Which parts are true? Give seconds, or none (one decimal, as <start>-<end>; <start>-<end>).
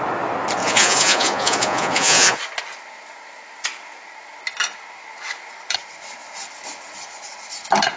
0.0-0.6; 2.4-8.0